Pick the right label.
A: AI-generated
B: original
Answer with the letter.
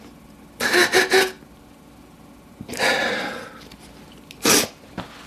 B